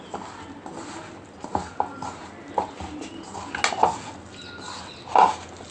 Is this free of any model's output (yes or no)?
yes